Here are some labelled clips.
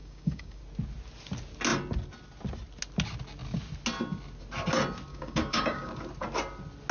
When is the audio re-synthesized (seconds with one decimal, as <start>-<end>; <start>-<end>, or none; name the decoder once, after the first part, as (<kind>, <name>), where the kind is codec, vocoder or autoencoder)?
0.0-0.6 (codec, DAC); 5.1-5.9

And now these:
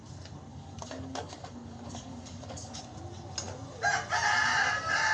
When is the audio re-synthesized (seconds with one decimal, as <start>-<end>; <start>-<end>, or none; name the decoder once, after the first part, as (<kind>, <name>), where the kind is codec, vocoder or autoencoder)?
0.5-2.8 (codec, DAC)

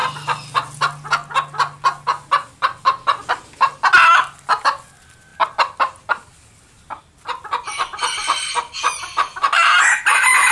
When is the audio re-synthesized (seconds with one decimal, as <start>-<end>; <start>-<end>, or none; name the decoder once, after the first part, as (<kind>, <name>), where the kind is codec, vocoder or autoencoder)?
none

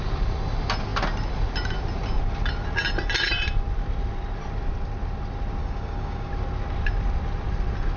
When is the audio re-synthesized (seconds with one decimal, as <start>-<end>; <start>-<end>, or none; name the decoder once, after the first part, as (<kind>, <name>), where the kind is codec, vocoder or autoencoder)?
5.6-6.3 (codec, DAC)